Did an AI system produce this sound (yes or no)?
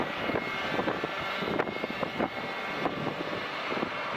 no